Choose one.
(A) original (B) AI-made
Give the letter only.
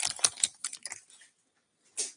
A